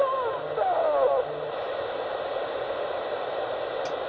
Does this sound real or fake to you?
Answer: real